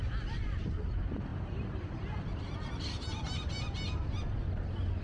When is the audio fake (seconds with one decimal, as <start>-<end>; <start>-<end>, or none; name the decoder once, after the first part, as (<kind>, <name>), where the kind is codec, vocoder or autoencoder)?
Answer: none